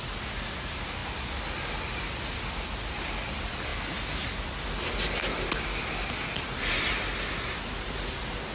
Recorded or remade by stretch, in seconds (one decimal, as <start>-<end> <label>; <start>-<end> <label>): 0.0-8.5 recorded